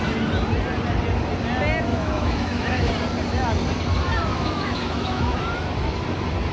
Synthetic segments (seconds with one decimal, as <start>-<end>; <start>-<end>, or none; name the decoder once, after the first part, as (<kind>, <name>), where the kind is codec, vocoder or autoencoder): 1.9-2.9 (autoencoder, DAC-VAE); 4.3-5.4